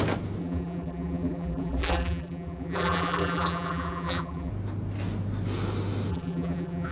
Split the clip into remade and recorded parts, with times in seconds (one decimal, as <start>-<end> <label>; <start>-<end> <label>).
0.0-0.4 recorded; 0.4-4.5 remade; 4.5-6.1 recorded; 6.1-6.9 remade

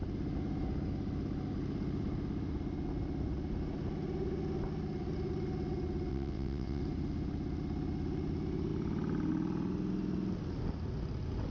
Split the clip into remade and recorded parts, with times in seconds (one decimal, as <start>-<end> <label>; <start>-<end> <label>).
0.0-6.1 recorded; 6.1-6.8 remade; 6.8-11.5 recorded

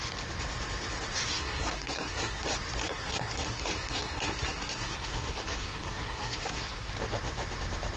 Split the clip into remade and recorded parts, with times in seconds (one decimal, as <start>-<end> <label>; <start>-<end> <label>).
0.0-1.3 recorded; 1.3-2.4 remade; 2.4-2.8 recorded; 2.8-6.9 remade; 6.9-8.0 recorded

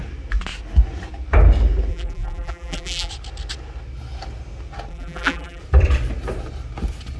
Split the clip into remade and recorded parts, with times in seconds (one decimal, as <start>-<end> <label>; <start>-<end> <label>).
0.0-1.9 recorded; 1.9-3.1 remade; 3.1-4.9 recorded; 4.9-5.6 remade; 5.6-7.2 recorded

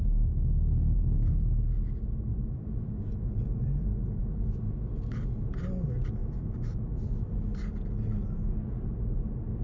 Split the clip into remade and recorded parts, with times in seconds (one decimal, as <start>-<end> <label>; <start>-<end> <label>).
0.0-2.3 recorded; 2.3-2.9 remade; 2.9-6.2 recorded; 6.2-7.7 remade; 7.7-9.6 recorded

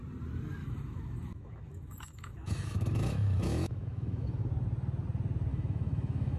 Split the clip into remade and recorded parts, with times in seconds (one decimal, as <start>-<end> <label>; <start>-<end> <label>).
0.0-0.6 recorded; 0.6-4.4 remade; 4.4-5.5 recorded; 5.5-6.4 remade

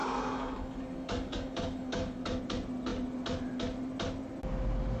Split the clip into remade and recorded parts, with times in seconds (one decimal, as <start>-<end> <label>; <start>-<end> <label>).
0.0-2.4 remade; 2.4-5.0 recorded

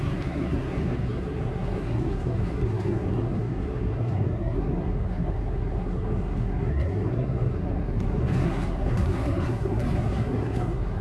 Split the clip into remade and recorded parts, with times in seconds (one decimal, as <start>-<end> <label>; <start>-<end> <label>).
0.0-11.0 remade